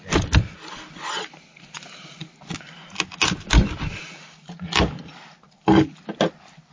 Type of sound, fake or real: real